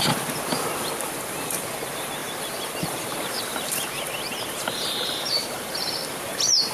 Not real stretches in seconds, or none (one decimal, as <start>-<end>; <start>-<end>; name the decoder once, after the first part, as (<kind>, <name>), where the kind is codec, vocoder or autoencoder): 2.2-6.2 (vocoder, BigVGAN v2)